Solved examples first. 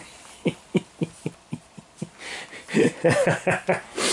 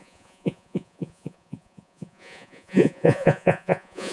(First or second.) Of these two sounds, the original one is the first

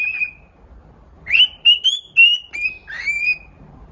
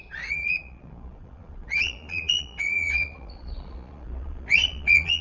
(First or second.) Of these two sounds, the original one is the first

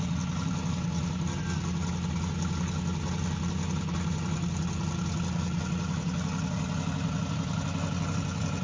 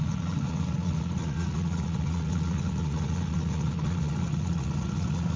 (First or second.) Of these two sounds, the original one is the first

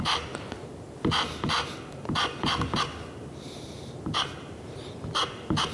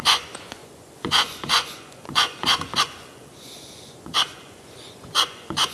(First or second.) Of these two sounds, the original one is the first